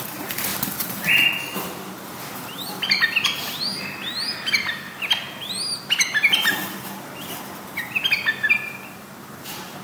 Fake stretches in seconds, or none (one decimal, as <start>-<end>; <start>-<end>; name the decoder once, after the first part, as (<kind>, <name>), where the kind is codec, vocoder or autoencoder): 0.5-1.3 (vocoder, BigVGAN v2)